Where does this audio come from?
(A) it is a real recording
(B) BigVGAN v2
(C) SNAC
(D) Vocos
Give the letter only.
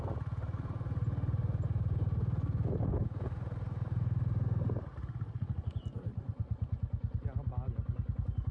A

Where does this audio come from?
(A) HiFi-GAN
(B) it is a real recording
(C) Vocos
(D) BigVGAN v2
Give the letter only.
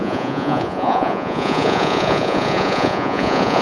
C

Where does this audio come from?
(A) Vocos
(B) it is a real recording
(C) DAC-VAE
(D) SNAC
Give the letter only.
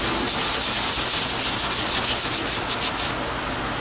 B